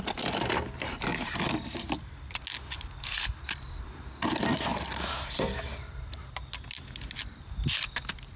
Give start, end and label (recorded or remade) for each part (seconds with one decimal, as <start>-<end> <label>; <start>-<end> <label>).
0.0-8.4 recorded